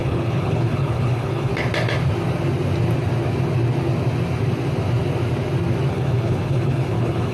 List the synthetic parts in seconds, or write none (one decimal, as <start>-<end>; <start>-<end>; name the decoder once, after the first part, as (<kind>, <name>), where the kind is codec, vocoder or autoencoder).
0.0-1.5 (codec, HILCodec); 5.9-7.3